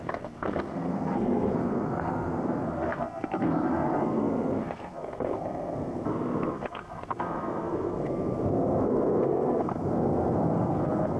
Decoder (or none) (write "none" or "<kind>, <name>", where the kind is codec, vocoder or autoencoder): codec, SNAC